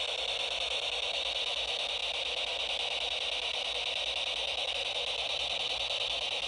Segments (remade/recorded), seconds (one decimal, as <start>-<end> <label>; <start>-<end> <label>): 0.0-6.5 recorded